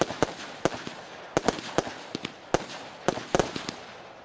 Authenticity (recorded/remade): recorded